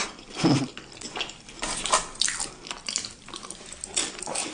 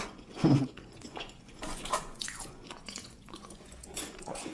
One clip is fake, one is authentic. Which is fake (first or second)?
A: second